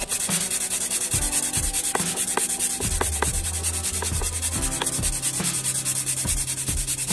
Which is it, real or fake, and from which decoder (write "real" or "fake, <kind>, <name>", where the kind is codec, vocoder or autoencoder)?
real